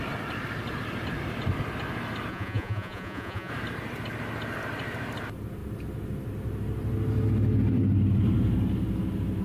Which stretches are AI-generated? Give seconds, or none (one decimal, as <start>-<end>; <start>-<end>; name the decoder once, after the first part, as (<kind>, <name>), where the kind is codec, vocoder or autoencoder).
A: 2.3-3.5 (vocoder, Vocos)